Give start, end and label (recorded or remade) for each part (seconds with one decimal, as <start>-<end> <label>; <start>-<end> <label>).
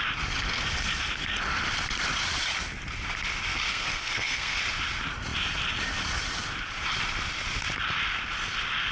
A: 0.0-3.7 recorded; 3.7-4.6 remade; 4.6-8.9 recorded